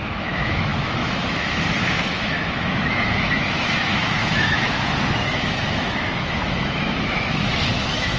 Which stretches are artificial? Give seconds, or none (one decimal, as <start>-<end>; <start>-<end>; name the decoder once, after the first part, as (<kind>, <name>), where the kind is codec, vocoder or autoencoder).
0.0-8.2 (autoencoder, DAC-VAE)